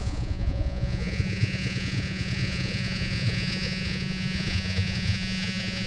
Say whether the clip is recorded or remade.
remade